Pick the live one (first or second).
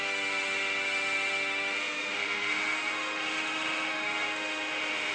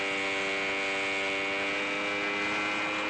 second